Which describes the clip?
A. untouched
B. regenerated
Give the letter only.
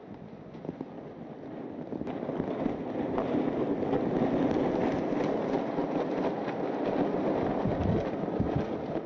A